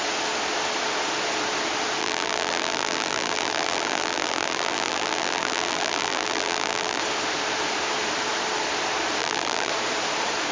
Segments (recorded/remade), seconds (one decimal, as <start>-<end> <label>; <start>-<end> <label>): 0.0-2.0 recorded; 2.0-7.0 remade; 7.0-9.2 recorded; 9.2-9.7 remade; 9.7-10.5 recorded